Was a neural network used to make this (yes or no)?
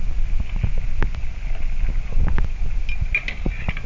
no